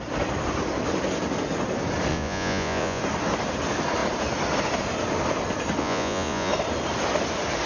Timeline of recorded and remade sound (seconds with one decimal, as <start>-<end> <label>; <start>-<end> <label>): 0.0-2.1 recorded; 2.1-3.0 remade; 3.0-5.8 recorded; 5.8-6.5 remade; 6.5-7.7 recorded